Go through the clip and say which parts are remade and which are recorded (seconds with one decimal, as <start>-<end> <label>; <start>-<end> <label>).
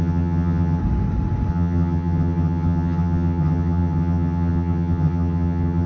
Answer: 0.0-0.8 remade; 0.8-1.5 recorded; 1.5-5.9 remade